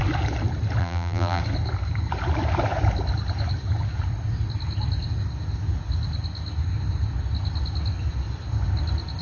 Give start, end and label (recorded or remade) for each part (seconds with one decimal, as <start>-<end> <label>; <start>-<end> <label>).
0.0-0.8 recorded; 0.8-1.4 remade; 1.4-9.2 recorded